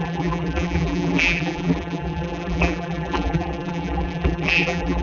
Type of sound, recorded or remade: remade